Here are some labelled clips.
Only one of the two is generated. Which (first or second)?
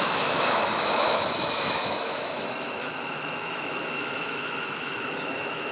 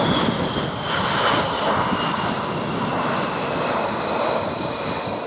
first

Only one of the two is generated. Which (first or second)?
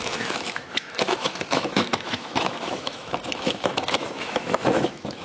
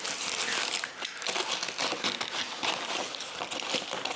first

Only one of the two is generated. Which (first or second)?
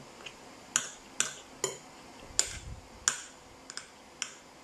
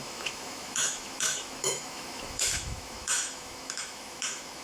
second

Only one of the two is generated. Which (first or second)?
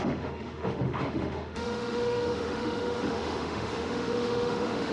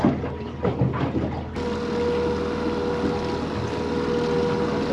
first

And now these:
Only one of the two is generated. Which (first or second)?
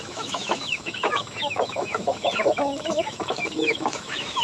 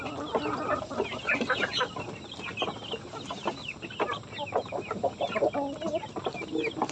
first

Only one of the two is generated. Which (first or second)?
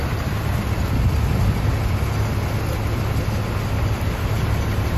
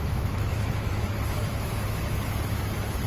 second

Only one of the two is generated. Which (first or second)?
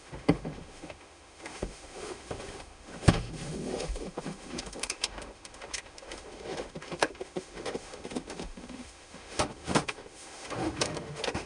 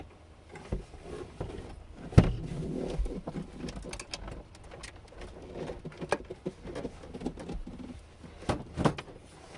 first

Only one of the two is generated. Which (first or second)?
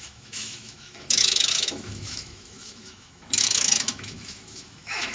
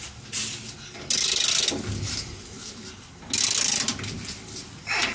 first